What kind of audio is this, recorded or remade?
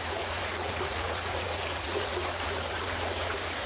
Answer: remade